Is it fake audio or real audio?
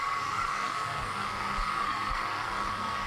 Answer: fake